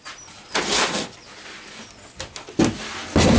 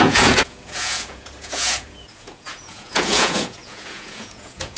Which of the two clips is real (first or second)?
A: first